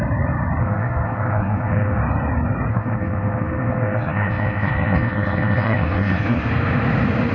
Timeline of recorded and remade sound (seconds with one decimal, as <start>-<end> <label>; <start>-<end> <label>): 0.0-0.6 recorded; 0.6-2.0 remade; 2.0-2.7 recorded; 2.7-6.5 remade; 6.5-7.3 recorded